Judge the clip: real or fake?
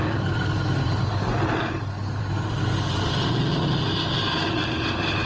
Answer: real